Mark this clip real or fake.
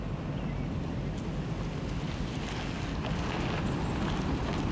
real